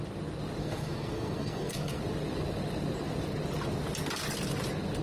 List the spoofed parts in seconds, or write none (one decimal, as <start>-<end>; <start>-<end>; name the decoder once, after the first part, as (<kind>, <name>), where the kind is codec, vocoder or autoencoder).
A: 0.6-2.0 (codec, SNAC)